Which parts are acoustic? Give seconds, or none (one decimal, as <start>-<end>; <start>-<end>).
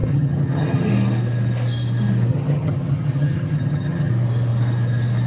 0.9-2.3; 4.1-5.3